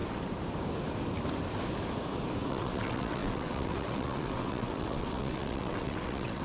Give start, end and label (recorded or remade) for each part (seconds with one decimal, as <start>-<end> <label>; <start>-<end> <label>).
0.0-2.5 recorded; 2.5-6.4 remade